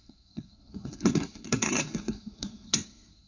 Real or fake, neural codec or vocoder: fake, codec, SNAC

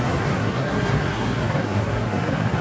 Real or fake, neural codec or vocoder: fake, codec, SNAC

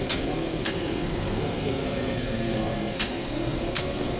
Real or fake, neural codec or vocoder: fake, codec, SNAC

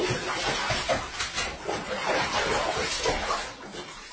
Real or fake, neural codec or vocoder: real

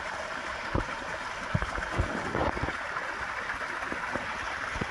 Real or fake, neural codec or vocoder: real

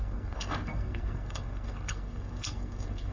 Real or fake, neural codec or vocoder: fake, codec, SNAC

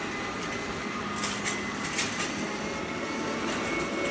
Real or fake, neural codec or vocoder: real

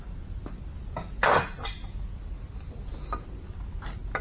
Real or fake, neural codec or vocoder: real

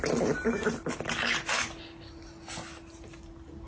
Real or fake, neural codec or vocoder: real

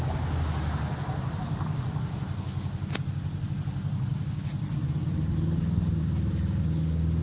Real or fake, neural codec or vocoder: real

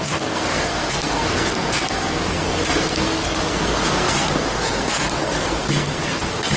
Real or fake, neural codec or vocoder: fake, codec, SNAC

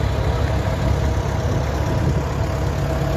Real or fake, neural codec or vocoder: real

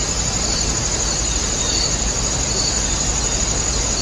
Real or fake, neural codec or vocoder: real